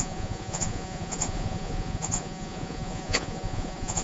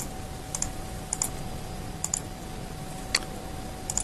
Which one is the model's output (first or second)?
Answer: first